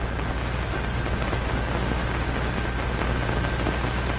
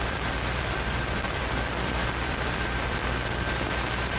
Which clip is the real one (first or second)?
first